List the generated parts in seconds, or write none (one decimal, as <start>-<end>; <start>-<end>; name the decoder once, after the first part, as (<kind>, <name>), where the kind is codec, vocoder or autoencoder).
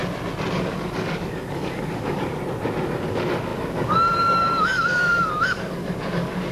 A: 0.5-2.4 (codec, DAC); 3.0-6.5